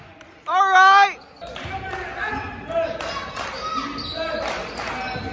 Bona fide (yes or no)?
yes